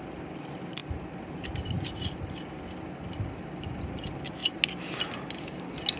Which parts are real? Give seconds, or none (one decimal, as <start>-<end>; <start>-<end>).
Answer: 0.0-6.0